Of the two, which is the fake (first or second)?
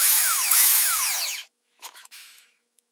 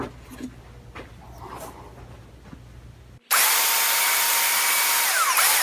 first